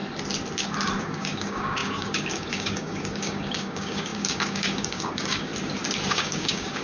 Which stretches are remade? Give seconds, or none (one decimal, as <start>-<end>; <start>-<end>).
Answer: 1.0-5.5; 6.1-6.8